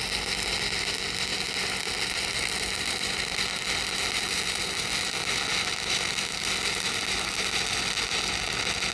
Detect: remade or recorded recorded